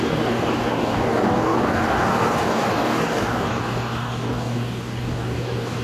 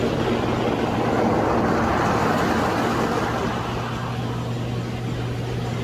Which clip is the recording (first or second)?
second